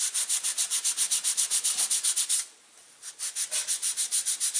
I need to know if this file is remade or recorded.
recorded